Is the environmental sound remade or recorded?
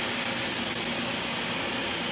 recorded